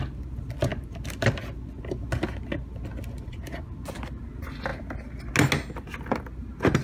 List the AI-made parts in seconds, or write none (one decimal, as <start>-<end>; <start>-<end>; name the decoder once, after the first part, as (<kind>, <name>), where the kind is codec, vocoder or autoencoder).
none